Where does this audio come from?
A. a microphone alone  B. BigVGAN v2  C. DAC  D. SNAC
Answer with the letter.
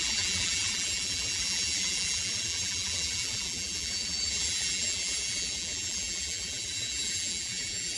B